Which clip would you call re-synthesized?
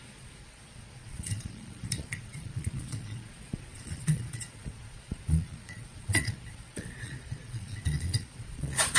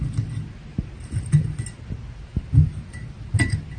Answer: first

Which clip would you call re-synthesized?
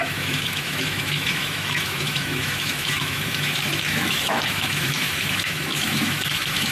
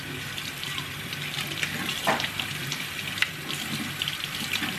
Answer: first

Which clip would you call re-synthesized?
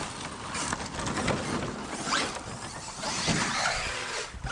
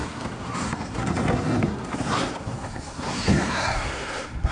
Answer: second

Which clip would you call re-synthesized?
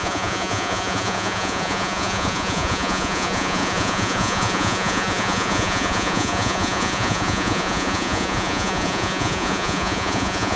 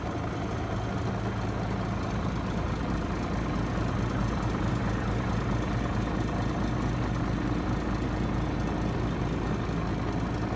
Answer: first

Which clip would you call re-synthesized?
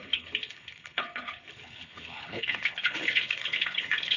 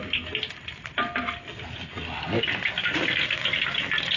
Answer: first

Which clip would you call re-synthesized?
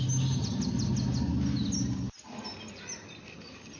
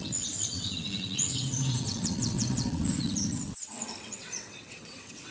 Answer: second